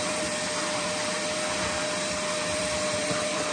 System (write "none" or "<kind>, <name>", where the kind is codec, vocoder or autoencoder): vocoder, BigVGAN v2